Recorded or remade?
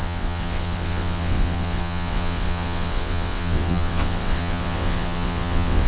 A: remade